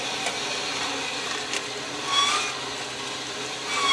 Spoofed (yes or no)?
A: no